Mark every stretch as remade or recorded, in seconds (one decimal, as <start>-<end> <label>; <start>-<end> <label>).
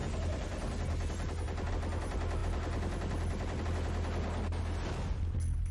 0.0-5.7 recorded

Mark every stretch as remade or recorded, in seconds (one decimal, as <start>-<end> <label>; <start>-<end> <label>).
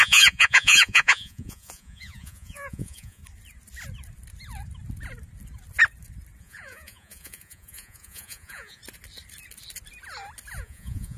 0.0-3.2 remade; 3.2-6.4 recorded; 6.4-8.8 remade; 8.8-10.6 recorded; 10.6-11.2 remade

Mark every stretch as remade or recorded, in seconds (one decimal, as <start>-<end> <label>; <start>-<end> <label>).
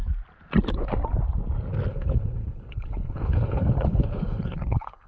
0.0-1.9 recorded; 1.9-5.1 remade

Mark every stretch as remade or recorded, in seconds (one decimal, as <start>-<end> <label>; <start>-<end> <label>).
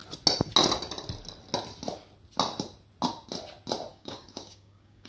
0.0-3.9 recorded; 3.9-5.1 remade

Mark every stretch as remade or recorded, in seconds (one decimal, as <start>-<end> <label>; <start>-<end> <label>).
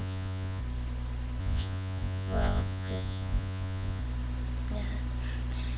0.0-0.6 remade; 0.6-1.4 recorded; 1.4-4.0 remade; 4.0-5.8 recorded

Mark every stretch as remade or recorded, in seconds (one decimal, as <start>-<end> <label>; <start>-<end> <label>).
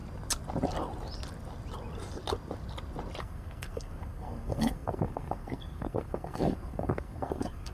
0.0-3.2 recorded; 3.2-7.7 remade